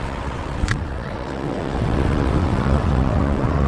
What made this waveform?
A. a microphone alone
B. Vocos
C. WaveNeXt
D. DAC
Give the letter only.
C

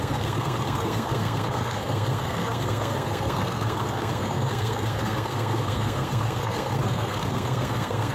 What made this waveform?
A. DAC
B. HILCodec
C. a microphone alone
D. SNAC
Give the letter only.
D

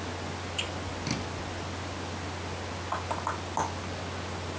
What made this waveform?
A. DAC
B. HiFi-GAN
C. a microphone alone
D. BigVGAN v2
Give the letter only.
C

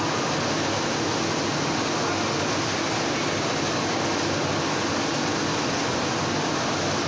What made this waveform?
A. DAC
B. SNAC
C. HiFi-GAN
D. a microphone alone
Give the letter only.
D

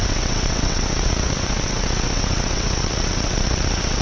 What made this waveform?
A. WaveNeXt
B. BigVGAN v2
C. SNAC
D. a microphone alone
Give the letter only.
A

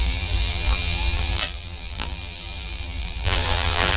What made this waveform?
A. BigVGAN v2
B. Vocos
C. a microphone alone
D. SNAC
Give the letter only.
A